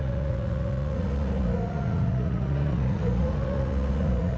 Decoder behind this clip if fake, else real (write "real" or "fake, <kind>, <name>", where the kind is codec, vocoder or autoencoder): fake, vocoder, Vocos